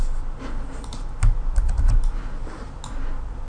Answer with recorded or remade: recorded